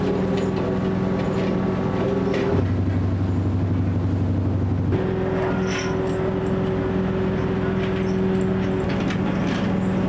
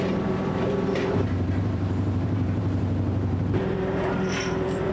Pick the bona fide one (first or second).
first